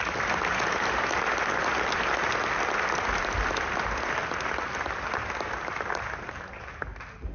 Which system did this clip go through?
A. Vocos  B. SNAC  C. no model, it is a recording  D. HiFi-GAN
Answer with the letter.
C